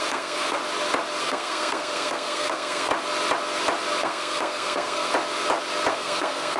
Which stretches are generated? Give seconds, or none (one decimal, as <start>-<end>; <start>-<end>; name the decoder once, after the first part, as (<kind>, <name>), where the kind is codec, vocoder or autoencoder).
0.0-0.6 (codec, SNAC); 1.2-2.9; 4.0-5.1; 5.9-6.6